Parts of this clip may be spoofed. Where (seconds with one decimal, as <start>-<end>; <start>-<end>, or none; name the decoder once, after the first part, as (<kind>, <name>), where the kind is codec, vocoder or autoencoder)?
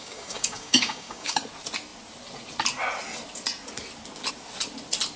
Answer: 0.0-1.4 (codec, DAC)